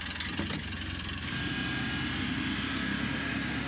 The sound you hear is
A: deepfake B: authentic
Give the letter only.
B